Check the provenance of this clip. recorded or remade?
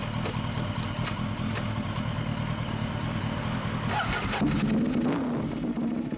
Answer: recorded